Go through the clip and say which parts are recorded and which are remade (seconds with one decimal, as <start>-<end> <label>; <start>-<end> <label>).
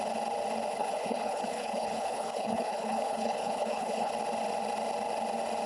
0.0-0.7 recorded; 0.7-4.1 remade; 4.1-5.7 recorded